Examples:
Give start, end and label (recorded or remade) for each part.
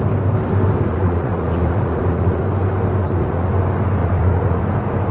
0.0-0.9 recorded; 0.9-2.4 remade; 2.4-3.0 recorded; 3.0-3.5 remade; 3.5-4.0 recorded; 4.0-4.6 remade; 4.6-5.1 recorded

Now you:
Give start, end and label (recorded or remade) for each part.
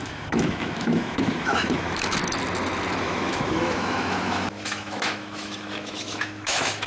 0.0-2.2 remade; 2.2-3.0 recorded; 3.0-6.9 remade